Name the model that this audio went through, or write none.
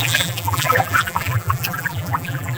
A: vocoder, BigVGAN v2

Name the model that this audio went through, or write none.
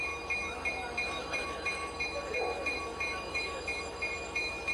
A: autoencoder, DAC-VAE